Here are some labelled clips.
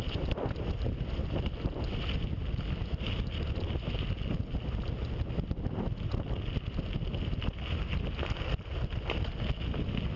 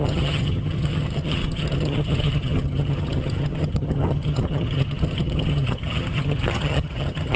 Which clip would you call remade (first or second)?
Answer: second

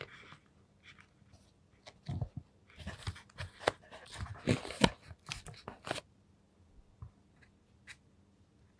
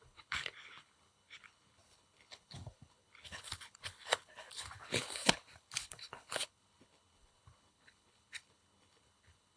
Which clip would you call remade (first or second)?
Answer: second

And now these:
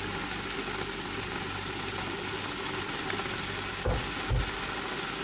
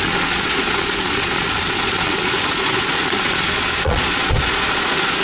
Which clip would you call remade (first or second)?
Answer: second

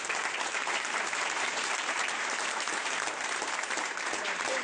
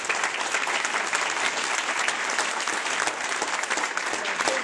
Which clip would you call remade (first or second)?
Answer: first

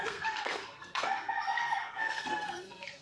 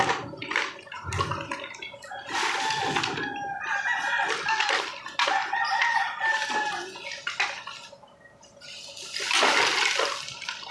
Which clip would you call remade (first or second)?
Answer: first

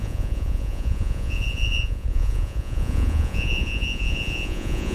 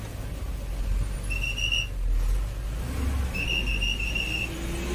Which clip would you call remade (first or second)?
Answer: first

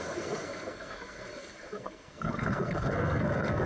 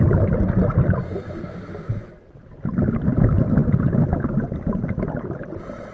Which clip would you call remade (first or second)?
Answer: first